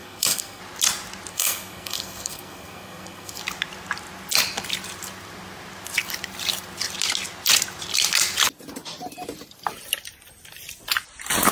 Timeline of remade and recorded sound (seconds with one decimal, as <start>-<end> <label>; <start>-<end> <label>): 0.0-0.6 remade; 0.6-1.3 recorded; 1.3-3.4 remade; 3.4-11.5 recorded